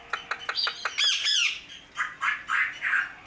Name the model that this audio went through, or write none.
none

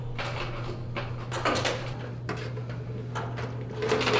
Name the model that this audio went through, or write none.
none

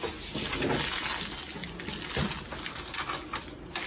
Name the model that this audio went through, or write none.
none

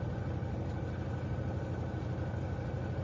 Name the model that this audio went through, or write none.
none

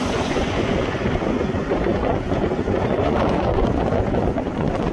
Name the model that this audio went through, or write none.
vocoder, Vocos